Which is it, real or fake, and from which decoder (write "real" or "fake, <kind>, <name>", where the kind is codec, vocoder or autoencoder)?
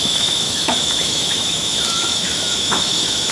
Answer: fake, autoencoder, DAC-VAE